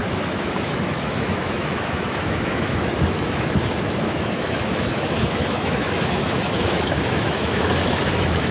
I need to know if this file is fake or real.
fake